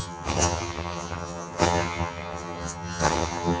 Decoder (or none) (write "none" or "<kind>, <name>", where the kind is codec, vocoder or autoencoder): vocoder, HiFi-GAN